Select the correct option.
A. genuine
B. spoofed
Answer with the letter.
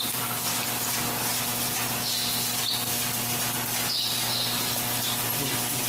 A